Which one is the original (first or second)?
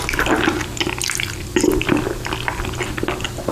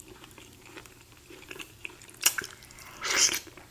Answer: first